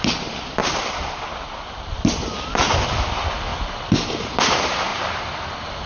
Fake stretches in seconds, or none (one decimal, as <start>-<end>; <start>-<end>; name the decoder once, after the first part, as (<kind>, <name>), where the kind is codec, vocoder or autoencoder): none